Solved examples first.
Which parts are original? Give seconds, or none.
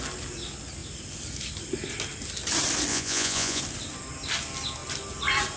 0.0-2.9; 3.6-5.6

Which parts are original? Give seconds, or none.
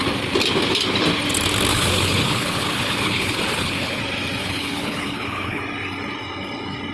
0.0-1.7; 4.0-4.4; 5.6-6.9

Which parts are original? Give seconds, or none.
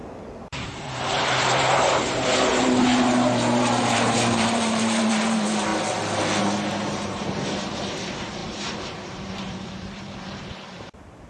5.7-6.4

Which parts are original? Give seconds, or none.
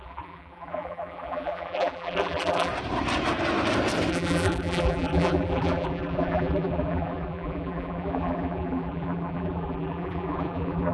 2.7-4.1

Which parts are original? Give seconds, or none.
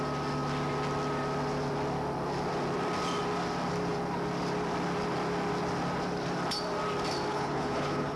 0.0-7.3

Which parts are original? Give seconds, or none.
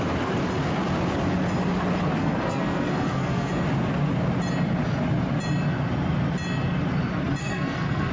0.0-2.2; 3.5-7.4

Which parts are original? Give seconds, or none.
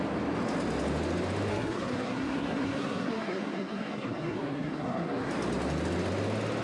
0.0-1.5; 5.3-6.6